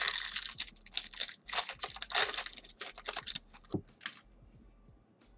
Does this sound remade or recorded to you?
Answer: recorded